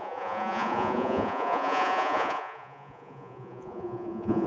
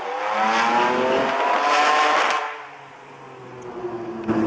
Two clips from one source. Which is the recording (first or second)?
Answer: second